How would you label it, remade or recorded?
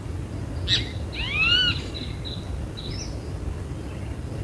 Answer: recorded